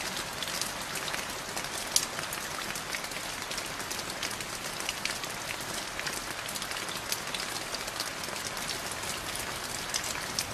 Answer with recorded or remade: recorded